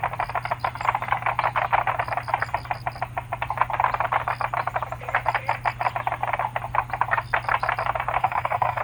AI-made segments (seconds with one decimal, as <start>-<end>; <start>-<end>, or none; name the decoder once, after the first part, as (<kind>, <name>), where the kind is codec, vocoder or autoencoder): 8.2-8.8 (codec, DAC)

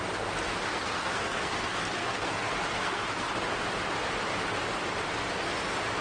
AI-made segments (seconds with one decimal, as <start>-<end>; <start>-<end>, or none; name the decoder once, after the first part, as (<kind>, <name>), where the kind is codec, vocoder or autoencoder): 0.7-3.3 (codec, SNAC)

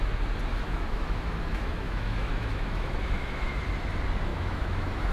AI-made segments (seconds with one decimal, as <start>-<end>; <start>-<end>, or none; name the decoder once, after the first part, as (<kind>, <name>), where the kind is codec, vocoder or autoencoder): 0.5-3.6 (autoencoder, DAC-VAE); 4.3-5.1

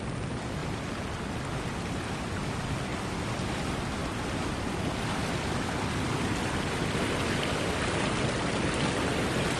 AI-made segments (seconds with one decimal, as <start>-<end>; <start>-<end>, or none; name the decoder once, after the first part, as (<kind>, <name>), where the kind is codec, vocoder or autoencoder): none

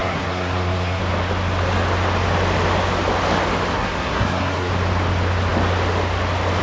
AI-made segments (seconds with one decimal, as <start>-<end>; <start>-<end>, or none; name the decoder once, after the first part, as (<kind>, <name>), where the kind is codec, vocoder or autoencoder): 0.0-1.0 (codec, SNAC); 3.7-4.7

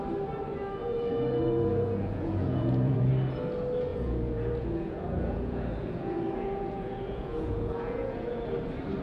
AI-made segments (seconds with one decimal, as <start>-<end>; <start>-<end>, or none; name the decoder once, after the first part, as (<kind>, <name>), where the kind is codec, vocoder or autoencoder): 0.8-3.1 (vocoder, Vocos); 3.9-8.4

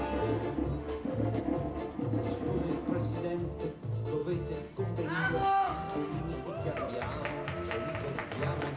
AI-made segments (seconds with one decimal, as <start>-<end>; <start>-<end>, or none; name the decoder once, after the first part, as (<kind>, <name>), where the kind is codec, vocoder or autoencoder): 0.8-1.4 (autoencoder, DAC-VAE); 5.2-6.2

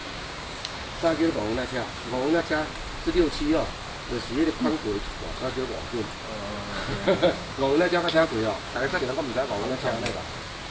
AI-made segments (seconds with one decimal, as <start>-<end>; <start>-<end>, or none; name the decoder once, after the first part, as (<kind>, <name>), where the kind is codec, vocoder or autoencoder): 0.0-2.4 (codec, DAC); 6.8-9.0